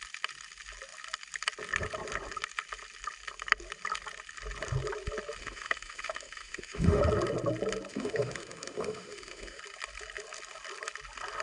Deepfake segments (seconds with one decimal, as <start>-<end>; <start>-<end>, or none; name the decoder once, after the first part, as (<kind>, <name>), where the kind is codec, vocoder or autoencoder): 5.4-7.0 (autoencoder, DAC-VAE); 7.9-9.6